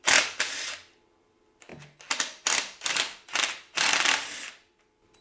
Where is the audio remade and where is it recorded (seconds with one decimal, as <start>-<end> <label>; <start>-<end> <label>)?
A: 0.0-5.2 recorded